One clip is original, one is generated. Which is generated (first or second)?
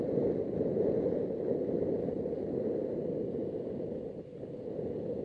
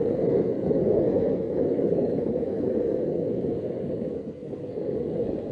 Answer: second